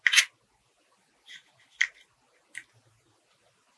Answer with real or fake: real